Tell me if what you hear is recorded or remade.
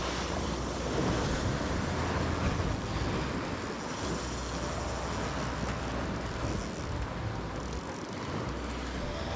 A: recorded